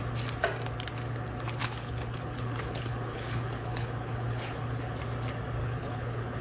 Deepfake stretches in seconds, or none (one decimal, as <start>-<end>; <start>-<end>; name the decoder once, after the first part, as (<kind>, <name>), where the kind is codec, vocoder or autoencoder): 1.6-5.0 (codec, HILCodec); 5.6-6.4